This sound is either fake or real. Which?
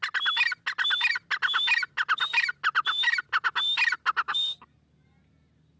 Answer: real